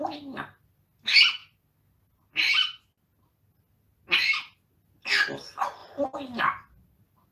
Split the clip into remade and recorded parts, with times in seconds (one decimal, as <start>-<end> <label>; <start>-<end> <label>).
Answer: 0.0-7.3 recorded